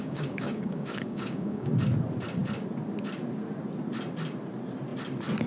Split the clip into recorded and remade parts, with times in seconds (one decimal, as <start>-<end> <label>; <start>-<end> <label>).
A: 0.0-1.7 remade; 1.7-5.5 recorded